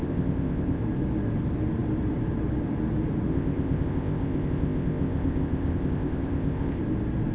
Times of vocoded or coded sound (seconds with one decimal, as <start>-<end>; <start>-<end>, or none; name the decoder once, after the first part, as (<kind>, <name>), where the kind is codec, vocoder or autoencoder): 0.0-0.8 (codec, ZipCodec); 3.3-6.8